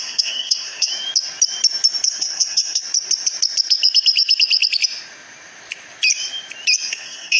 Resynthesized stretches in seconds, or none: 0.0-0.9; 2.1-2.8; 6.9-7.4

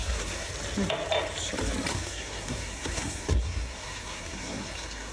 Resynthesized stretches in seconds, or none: 0.0-0.5; 1.9-5.1

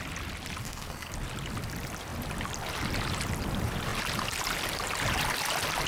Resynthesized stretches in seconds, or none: 0.6-1.1

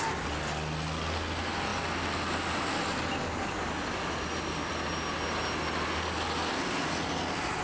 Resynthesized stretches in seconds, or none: none

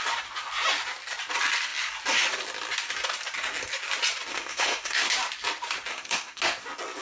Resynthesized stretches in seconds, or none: 4.3-5.1; 5.9-6.4

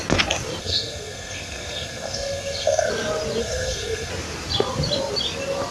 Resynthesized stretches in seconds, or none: 0.6-2.9; 3.4-4.1

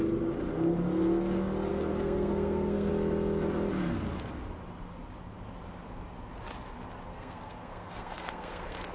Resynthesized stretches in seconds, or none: 1.7-2.9; 7.1-8.9